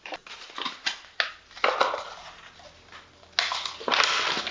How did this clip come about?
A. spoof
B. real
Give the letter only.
B